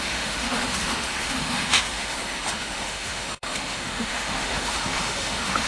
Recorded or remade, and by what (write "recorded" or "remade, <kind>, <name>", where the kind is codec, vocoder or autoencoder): remade, autoencoder, DAC-VAE